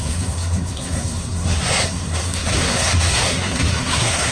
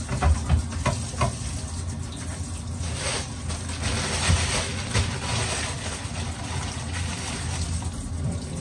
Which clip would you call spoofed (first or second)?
first